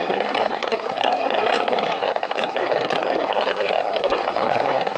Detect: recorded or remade remade